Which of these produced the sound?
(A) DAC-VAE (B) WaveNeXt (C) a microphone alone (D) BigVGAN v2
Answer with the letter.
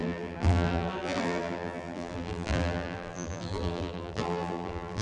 D